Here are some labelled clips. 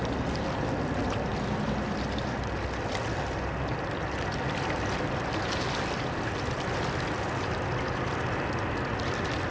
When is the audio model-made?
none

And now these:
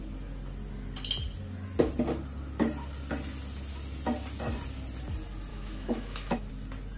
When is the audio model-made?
5.5-6.5 (autoencoder, DAC-VAE)

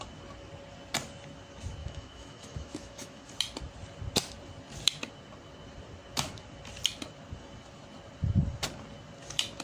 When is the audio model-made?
1.8-3.3 (autoencoder, DAC-VAE)